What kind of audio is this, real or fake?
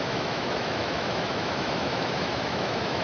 fake